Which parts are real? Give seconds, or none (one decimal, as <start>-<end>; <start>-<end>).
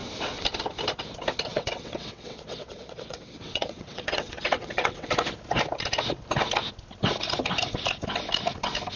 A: 0.0-1.5; 5.1-9.0